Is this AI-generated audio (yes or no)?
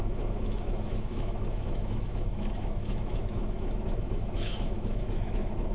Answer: yes